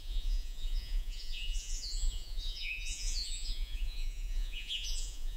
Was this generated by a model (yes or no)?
yes